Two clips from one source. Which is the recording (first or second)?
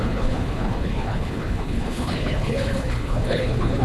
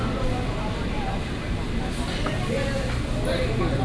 second